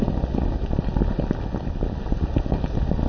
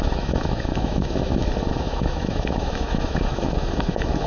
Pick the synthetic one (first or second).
second